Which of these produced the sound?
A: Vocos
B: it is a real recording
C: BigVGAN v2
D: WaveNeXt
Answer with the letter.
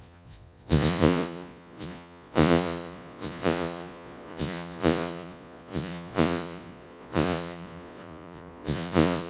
A